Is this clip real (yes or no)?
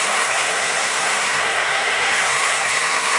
no